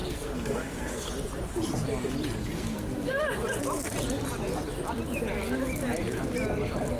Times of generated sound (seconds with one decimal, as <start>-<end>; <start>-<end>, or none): 0.0-1.1; 2.4-3.2